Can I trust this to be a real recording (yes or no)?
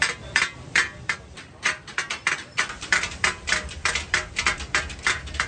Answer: no